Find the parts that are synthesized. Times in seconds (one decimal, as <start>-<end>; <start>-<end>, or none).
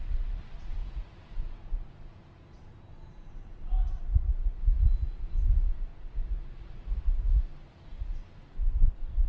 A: 0.8-5.2; 5.9-6.6